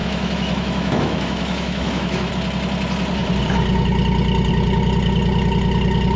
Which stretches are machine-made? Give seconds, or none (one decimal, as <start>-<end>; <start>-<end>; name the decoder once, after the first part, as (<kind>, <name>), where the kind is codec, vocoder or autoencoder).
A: 0.0-2.3 (autoencoder, DAC-VAE)